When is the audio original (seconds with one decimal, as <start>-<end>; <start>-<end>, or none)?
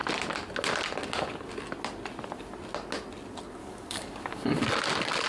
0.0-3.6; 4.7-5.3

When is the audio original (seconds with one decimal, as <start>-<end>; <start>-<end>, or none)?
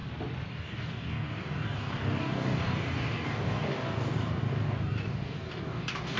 0.0-0.5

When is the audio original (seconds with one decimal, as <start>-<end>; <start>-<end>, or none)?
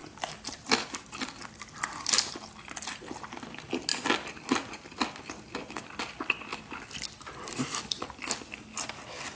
0.0-9.4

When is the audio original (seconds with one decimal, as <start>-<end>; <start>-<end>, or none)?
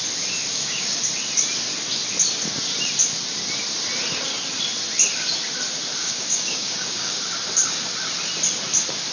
0.0-0.5; 1.0-6.0; 7.2-9.1